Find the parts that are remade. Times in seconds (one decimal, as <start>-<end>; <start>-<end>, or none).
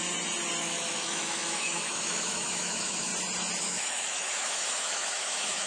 0.6-3.1; 3.6-5.7